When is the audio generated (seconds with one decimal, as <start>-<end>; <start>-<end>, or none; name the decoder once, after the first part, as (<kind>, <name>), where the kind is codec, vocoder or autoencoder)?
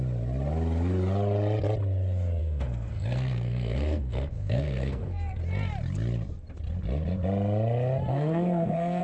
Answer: 2.4-5.4 (codec, SNAC); 8.1-9.0